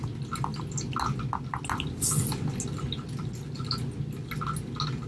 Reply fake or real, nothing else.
real